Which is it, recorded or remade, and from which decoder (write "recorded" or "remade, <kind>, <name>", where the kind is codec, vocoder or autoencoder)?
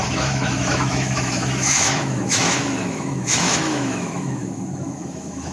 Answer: remade, autoencoder, DAC-VAE